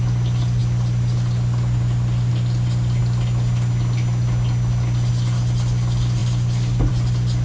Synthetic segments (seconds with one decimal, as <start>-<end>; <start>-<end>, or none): none